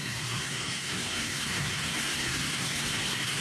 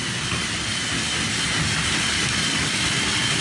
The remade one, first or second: first